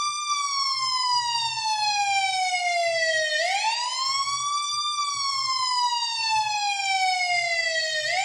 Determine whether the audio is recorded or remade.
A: recorded